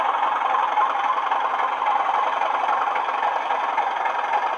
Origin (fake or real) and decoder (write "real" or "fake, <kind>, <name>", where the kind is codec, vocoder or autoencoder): real